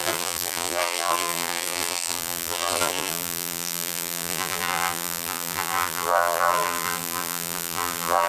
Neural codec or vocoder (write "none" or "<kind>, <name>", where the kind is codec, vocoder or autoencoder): vocoder, BigVGAN v2